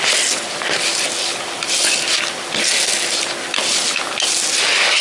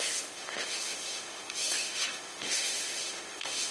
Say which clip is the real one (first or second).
first